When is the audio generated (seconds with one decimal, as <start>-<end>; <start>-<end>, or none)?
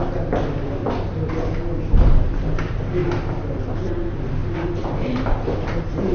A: 0.8-1.3; 3.0-3.6; 4.4-6.1